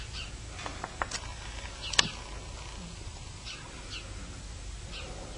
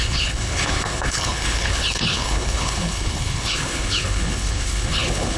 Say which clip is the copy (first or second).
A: second